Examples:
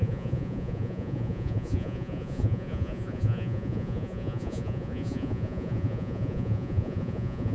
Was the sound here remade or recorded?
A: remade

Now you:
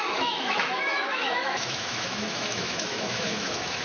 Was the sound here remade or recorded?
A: remade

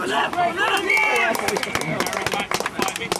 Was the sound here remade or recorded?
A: recorded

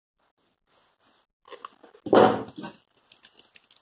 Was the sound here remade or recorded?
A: recorded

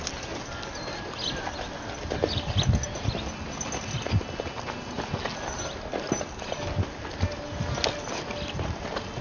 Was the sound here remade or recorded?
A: recorded